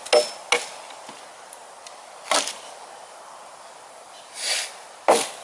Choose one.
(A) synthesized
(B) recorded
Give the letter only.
B